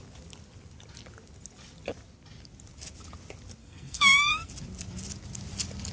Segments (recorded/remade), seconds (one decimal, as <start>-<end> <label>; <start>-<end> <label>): 0.0-3.6 recorded; 3.6-4.5 remade; 4.5-5.9 recorded